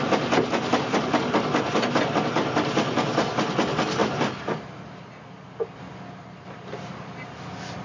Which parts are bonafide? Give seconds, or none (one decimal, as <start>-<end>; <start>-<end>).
0.0-7.8